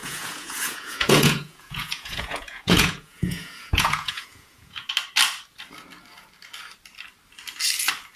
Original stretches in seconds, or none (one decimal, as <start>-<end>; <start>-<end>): 4.9-8.2